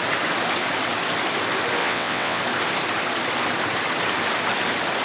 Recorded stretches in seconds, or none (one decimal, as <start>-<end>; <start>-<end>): 0.0-1.8; 2.4-5.0